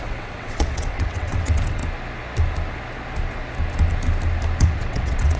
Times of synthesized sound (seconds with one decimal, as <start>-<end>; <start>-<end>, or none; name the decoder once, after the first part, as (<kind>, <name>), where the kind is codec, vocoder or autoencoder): 0.0-1.8 (vocoder, WaveNeXt); 4.6-5.4